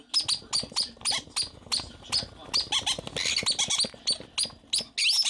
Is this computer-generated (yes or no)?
no